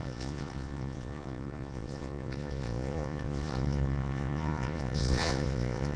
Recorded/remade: remade